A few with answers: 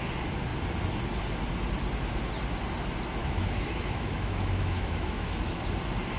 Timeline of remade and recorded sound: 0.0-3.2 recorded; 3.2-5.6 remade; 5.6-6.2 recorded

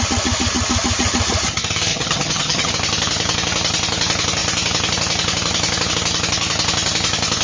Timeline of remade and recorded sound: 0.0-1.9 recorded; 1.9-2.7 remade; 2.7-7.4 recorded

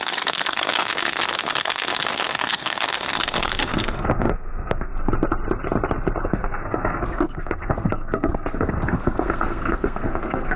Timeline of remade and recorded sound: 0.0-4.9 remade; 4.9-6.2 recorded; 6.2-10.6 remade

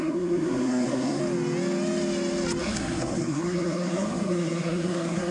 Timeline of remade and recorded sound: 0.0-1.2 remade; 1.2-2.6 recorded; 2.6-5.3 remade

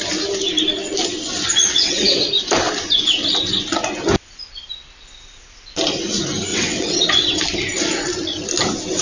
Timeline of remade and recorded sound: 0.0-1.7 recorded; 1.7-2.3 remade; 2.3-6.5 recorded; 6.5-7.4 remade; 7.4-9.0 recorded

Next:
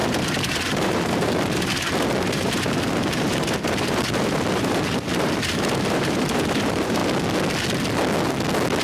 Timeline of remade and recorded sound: 0.0-7.0 remade; 7.0-8.8 recorded

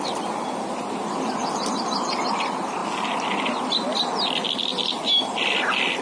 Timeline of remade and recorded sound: 0.0-6.0 recorded